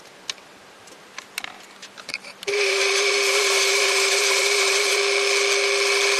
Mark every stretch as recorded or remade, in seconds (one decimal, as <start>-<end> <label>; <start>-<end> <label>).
0.0-1.8 recorded; 1.8-5.0 remade; 5.0-6.2 recorded